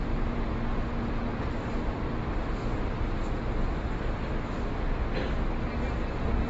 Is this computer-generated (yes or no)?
no